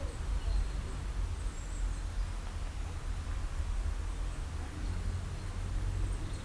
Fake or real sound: real